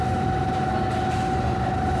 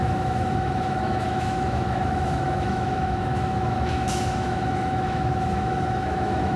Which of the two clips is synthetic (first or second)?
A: second